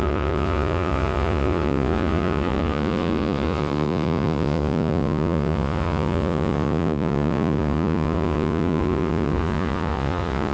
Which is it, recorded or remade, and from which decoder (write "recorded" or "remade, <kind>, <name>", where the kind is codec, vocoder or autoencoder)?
remade, vocoder, Vocos